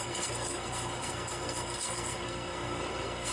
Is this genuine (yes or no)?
no